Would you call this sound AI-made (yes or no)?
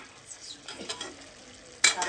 no